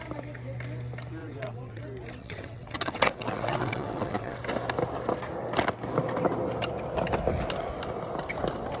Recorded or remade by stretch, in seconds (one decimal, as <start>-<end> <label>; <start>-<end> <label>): 0.0-1.2 recorded; 1.2-1.8 remade; 1.8-2.2 recorded; 2.2-4.4 remade; 4.4-8.8 recorded